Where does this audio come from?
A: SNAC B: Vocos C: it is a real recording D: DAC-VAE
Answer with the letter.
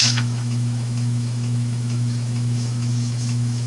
D